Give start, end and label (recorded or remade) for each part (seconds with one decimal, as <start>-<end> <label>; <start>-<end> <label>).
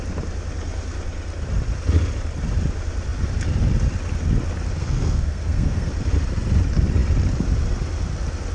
0.0-4.8 recorded; 4.8-5.9 remade; 5.9-8.5 recorded